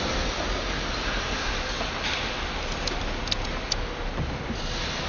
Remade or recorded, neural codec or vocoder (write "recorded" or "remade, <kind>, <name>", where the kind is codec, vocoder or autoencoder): recorded